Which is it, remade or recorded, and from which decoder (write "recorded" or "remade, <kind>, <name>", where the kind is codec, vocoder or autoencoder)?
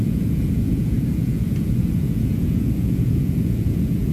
remade, vocoder, Vocos